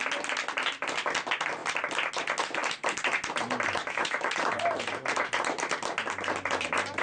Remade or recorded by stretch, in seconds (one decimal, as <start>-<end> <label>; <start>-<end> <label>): 0.0-3.8 recorded; 3.8-4.3 remade; 4.3-7.0 recorded